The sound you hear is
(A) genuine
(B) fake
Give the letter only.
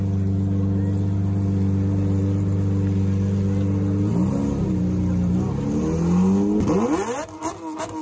A